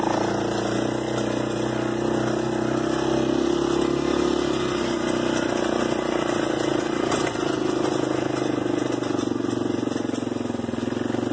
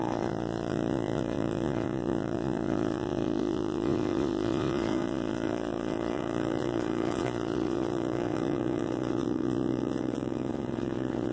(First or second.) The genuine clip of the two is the first